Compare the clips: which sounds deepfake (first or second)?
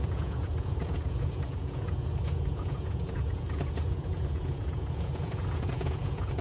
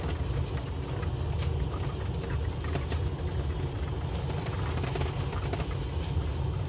first